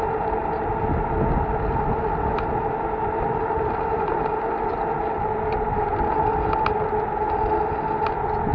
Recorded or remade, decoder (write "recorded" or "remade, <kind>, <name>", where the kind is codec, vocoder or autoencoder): recorded